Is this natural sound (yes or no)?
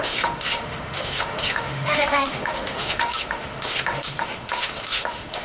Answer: no